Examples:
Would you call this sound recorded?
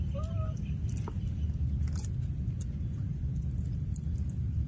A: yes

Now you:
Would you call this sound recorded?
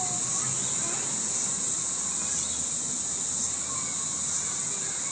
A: yes